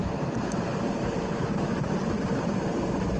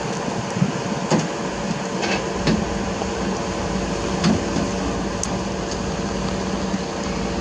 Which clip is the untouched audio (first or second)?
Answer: second